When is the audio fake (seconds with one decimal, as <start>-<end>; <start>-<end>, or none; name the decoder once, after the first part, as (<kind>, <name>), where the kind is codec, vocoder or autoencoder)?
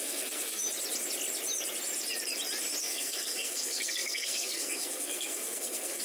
0.0-0.6 (codec, SNAC); 2.8-6.0